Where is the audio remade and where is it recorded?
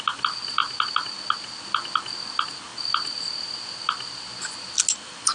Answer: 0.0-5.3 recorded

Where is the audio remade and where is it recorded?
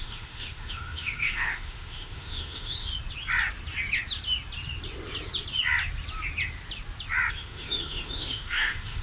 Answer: 0.0-2.9 remade; 2.9-7.3 recorded; 7.3-9.0 remade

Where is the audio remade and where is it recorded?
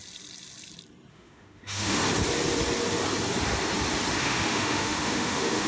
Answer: 0.0-1.1 recorded; 1.1-2.0 remade; 2.0-4.2 recorded; 4.2-5.7 remade